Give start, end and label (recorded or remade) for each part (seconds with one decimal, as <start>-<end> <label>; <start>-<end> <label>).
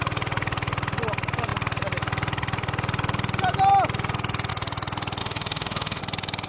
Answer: 0.0-5.2 recorded; 5.2-6.0 remade; 6.0-6.5 recorded